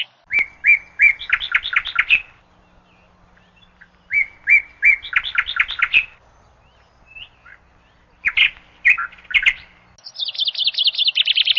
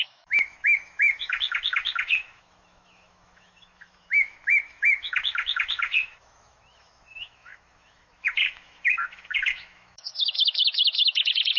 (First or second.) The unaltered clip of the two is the first